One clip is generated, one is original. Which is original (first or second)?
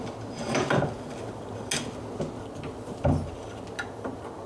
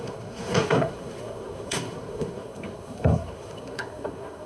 first